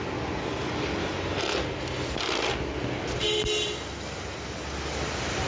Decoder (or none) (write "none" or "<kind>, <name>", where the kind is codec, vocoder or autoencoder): none